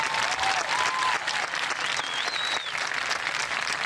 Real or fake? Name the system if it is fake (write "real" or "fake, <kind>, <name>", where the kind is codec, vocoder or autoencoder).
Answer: real